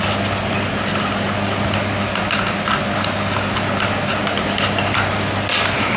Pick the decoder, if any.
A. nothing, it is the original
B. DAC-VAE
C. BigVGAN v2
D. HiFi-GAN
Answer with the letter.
A